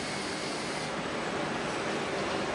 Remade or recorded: recorded